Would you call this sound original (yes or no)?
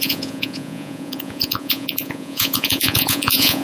no